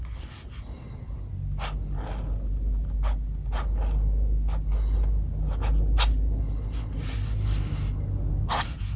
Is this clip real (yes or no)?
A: yes